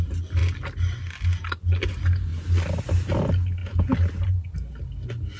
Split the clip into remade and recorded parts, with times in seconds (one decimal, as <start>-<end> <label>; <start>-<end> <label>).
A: 0.0-5.4 recorded